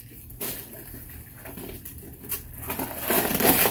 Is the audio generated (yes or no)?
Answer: no